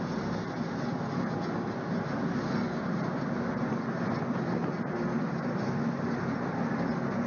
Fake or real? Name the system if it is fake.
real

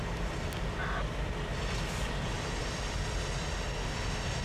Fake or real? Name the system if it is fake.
real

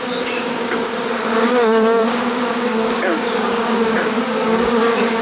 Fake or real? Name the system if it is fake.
fake, codec, DAC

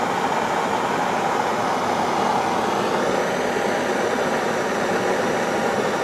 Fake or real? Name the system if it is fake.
real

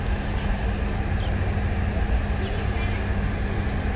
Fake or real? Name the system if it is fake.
real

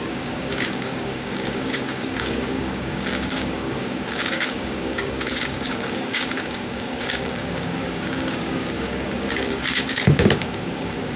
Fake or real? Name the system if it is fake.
fake, codec, DAC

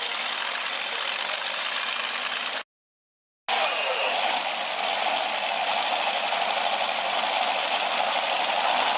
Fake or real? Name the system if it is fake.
real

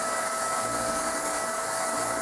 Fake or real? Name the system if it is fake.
fake, codec, DAC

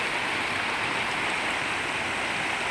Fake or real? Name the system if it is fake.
real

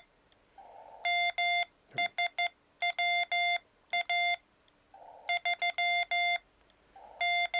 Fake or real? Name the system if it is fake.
real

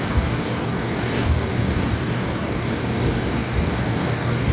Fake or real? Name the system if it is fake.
fake, codec, DAC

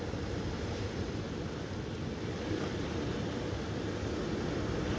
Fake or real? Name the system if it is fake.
real